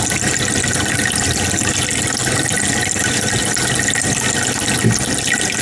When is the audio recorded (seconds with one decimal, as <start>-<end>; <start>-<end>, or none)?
0.0-5.6